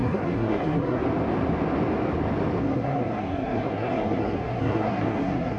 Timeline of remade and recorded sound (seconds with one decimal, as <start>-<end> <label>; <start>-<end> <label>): 0.0-1.0 remade; 1.0-2.6 recorded; 2.6-5.6 remade

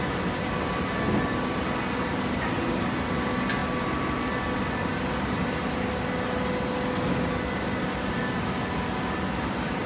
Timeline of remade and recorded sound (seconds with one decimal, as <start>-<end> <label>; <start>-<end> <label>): 0.0-9.9 recorded

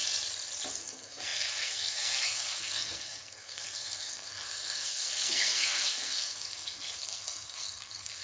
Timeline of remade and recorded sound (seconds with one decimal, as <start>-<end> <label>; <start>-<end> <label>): 0.0-0.7 recorded; 0.7-8.2 remade

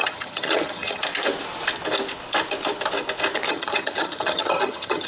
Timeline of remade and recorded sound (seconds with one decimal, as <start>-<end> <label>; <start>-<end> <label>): 0.0-1.0 remade; 1.0-3.5 recorded; 3.5-5.1 remade

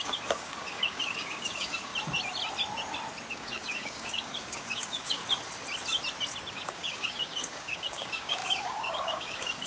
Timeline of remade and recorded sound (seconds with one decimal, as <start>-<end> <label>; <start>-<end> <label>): 0.0-1.9 remade; 1.9-3.3 recorded; 3.3-5.2 remade; 5.2-6.5 recorded; 6.5-9.7 remade

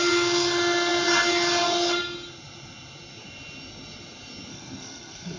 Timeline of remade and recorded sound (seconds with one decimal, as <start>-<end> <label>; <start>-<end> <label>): 0.0-4.5 recorded; 4.5-5.4 remade